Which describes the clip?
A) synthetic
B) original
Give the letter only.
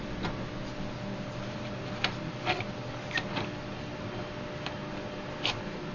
B